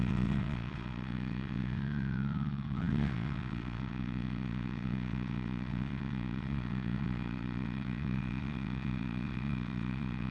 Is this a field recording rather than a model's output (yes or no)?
no